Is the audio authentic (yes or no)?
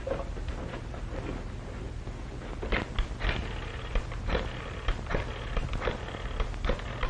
yes